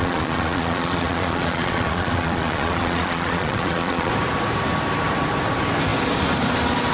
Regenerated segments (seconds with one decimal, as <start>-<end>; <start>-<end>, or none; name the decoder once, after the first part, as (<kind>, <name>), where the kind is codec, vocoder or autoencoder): 0.0-4.1 (vocoder, Vocos)